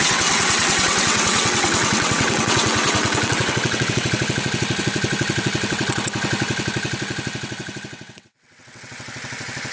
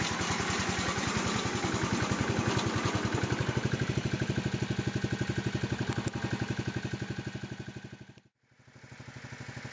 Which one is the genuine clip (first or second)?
second